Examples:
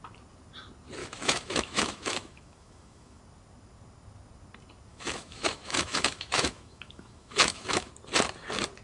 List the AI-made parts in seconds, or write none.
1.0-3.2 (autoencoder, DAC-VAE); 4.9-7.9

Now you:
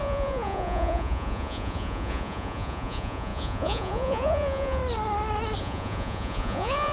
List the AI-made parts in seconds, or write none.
0.0-4.8 (vocoder, Vocos); 5.6-6.9

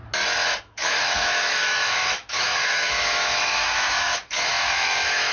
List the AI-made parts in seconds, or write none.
0.6-5.3 (autoencoder, DAC-VAE)

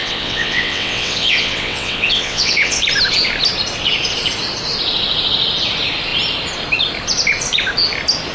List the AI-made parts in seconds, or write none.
0.0-2.8 (vocoder, WaveNeXt)

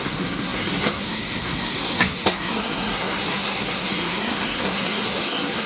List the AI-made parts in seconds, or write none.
0.0-5.7 (codec, SNAC)

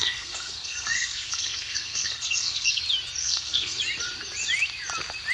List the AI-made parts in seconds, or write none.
0.0-2.8 (codec, SNAC); 3.2-3.8